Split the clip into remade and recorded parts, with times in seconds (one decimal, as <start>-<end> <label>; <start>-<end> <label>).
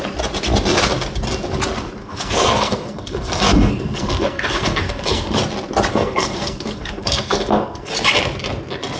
0.0-2.0 recorded; 2.0-5.4 remade; 5.4-5.9 recorded; 5.9-7.9 remade; 7.9-9.0 recorded